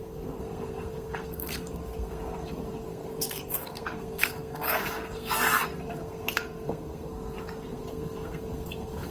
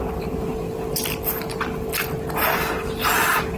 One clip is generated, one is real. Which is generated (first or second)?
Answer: first